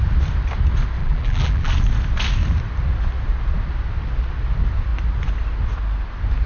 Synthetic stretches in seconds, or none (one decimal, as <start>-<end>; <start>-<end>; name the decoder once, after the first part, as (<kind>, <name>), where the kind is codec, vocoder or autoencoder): 1.0-1.7 (vocoder, BigVGAN v2)